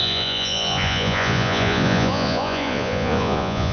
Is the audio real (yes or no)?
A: no